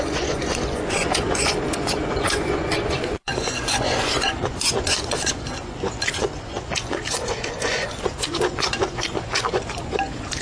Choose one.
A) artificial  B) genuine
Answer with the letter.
A